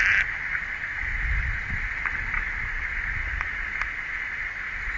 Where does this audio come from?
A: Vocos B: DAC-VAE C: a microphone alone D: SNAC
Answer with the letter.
C